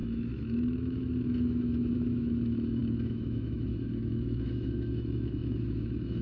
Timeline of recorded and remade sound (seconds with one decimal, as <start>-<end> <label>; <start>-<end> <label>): 0.0-6.2 remade